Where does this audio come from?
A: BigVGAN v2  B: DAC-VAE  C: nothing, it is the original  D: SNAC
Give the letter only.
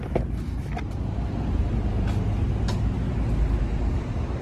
C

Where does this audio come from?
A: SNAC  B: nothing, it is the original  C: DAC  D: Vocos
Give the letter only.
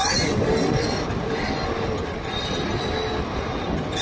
B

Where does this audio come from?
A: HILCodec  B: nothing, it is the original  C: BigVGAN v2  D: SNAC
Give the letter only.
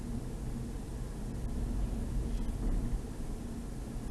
B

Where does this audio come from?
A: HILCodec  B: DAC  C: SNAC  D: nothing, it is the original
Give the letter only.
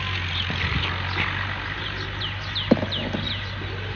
D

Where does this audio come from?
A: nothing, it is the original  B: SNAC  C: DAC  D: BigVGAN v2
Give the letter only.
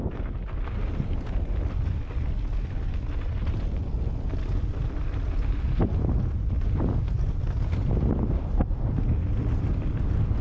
A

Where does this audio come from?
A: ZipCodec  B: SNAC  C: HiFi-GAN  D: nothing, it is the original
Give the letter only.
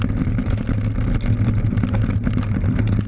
D